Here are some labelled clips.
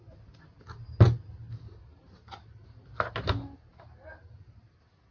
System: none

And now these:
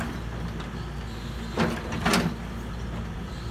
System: none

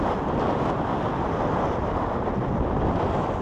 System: none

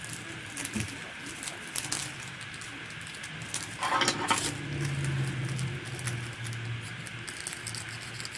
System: none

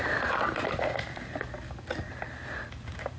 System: none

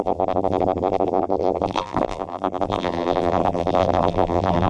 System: vocoder, BigVGAN v2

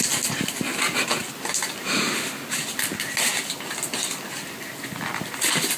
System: none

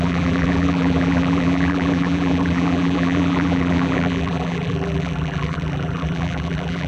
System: vocoder, BigVGAN v2